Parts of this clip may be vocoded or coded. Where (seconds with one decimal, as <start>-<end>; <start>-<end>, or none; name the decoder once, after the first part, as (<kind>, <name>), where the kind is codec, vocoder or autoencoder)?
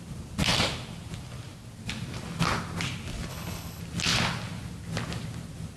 3.3-3.8 (codec, HILCodec)